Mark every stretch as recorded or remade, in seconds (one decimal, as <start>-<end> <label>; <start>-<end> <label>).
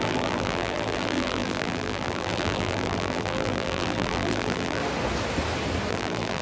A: 0.0-4.8 remade; 4.8-5.9 recorded; 5.9-6.4 remade